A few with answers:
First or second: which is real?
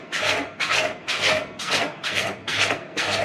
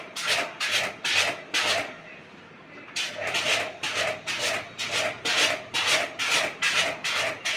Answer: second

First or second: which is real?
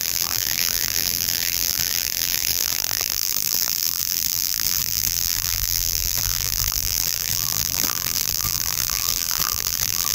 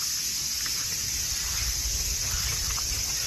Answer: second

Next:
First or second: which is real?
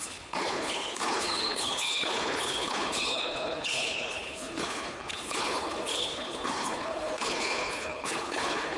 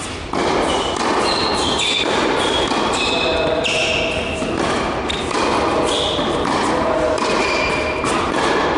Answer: second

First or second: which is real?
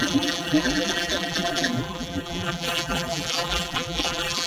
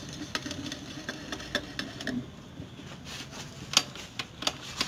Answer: second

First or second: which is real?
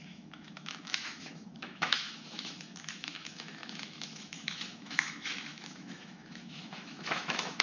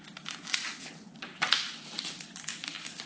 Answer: second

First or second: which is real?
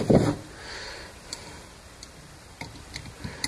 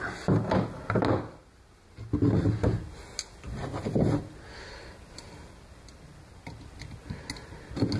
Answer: second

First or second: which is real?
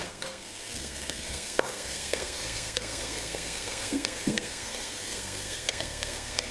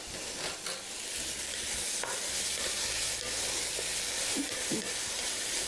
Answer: second